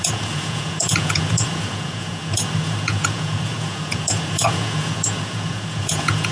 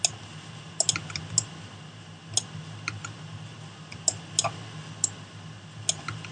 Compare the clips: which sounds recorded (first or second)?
second